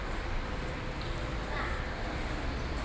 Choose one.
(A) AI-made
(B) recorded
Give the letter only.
B